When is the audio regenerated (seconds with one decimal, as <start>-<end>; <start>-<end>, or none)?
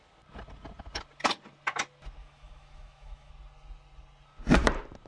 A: 2.2-3.3